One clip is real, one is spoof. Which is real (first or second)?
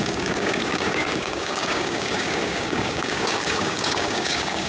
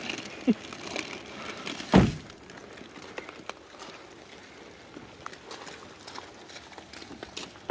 second